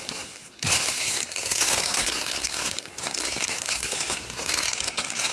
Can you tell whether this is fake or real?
fake